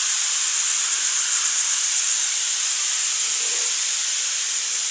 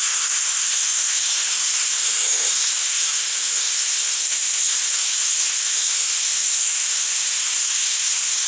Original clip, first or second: first